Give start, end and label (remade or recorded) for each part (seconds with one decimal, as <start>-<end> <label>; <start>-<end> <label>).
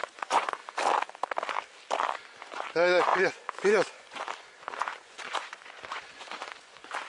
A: 0.0-0.6 remade; 0.6-2.4 recorded; 2.4-7.1 remade